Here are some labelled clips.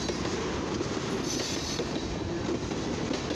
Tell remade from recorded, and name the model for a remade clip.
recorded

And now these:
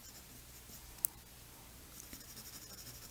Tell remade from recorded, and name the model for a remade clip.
remade, vocoder, BigVGAN v2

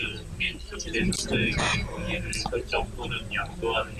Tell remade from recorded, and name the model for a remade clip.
remade, vocoder, BigVGAN v2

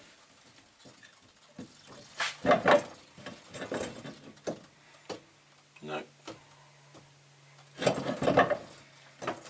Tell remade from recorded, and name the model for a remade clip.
recorded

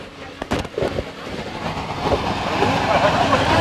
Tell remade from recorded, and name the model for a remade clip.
recorded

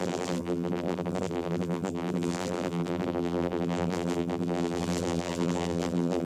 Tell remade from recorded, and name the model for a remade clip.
remade, vocoder, BigVGAN v2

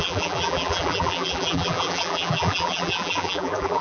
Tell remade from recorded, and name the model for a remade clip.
remade, vocoder, BigVGAN v2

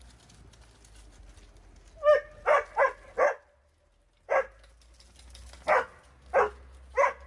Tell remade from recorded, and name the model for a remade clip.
recorded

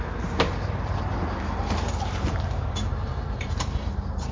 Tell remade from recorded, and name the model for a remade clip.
remade, vocoder, BigVGAN v2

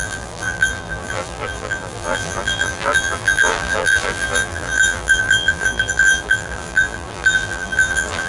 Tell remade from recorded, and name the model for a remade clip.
remade, vocoder, BigVGAN v2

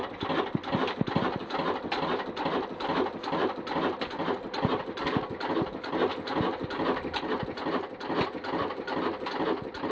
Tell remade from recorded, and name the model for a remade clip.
recorded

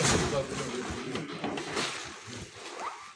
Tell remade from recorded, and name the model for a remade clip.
recorded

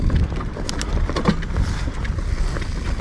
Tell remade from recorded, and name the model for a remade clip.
recorded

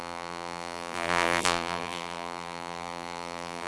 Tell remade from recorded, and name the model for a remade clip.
remade, vocoder, BigVGAN v2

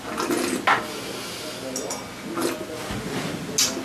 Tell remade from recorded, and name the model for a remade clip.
recorded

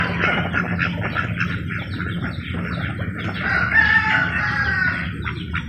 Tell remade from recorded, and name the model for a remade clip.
recorded